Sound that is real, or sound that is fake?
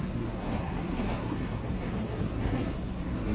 fake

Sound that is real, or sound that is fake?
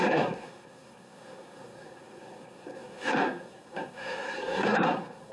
fake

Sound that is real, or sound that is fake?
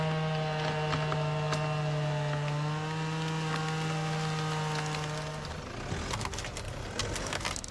real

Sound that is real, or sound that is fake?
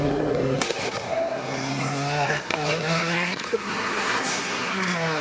fake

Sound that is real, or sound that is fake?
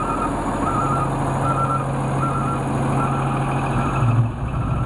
real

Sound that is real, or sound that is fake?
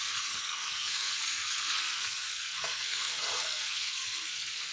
fake